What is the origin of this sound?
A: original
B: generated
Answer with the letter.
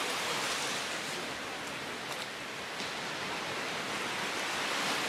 A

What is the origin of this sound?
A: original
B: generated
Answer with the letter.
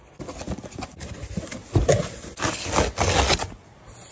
A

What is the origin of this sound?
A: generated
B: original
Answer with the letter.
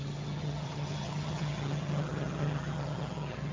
A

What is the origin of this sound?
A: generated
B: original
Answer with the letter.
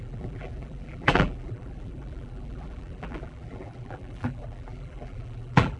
A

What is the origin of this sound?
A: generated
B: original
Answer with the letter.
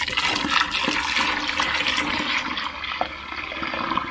B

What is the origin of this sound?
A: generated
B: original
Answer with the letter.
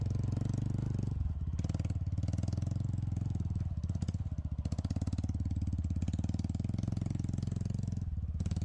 B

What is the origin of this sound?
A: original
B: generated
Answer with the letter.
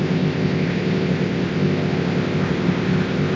B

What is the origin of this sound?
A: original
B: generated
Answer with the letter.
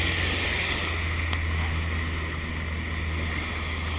A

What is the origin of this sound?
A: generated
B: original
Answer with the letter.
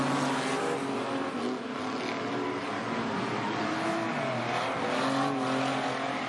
B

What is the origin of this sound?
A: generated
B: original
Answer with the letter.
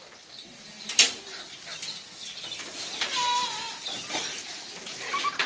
B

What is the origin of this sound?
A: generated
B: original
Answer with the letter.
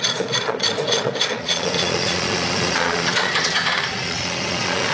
A